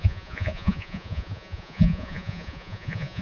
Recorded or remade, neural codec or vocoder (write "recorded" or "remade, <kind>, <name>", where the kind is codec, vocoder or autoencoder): remade, vocoder, Vocos